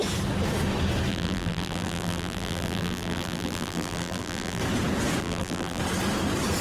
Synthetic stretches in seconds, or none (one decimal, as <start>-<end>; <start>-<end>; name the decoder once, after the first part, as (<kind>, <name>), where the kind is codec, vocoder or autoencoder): 1.1-4.6 (vocoder, BigVGAN v2); 5.2-5.8